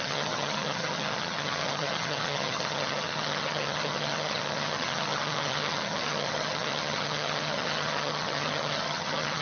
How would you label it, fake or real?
fake